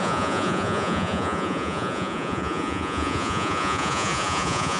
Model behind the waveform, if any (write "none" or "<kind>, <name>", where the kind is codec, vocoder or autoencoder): vocoder, Vocos